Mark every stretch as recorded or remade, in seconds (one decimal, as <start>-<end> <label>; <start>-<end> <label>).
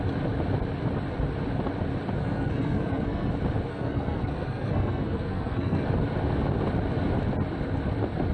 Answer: 0.0-2.2 recorded; 2.2-3.3 remade; 3.3-3.7 recorded; 3.7-5.9 remade; 5.9-8.3 recorded